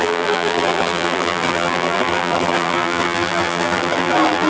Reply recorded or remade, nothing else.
remade